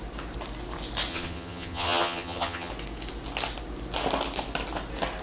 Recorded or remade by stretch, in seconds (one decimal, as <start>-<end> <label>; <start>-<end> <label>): 0.0-1.1 recorded; 1.1-2.7 remade; 2.7-5.2 recorded